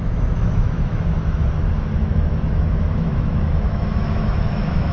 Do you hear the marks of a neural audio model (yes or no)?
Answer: yes